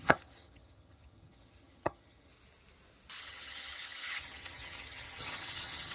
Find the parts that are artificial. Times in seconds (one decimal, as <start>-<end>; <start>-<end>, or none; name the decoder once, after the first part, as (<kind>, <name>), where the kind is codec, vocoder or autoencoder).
0.0-2.3 (vocoder, HiFi-GAN); 3.2-5.9